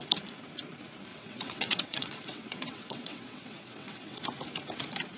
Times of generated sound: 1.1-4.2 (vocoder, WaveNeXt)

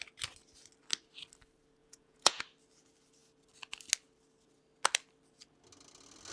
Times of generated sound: 1.8-2.4 (vocoder, Vocos)

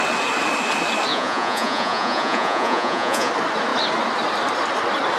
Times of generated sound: 1.1-3.3 (vocoder, Vocos)

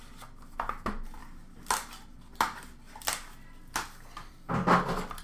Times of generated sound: none

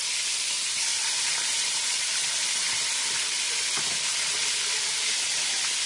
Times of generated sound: 0.9-2.0 (vocoder, BigVGAN v2)

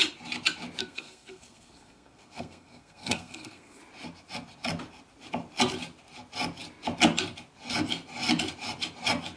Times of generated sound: 0.8-3.8 (codec, SNAC)